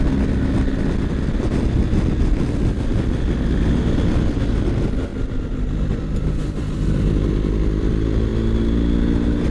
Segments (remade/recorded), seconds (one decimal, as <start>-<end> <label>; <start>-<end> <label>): 0.0-5.1 recorded; 5.1-7.1 remade; 7.1-9.5 recorded